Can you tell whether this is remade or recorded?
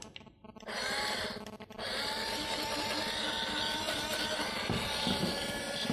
recorded